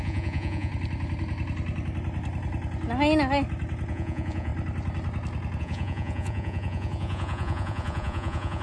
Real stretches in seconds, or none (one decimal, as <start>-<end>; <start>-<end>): 0.7-3.9; 4.5-5.6